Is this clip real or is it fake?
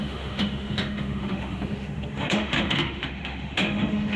fake